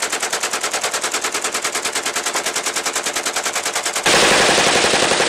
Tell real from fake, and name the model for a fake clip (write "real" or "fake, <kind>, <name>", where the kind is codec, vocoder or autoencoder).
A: real